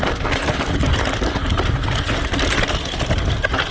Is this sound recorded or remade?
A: recorded